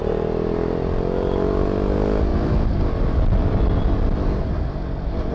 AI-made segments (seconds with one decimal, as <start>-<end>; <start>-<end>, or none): none